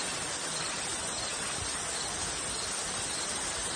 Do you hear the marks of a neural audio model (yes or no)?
no